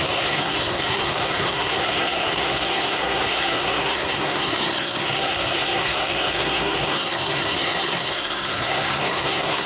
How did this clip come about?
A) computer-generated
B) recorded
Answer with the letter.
A